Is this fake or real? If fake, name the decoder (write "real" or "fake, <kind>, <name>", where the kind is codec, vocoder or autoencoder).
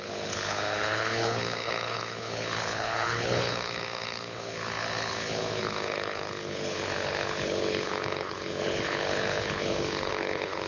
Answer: fake, codec, HILCodec